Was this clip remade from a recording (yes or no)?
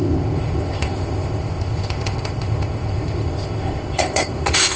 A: yes